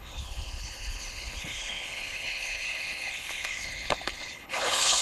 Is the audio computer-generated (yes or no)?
yes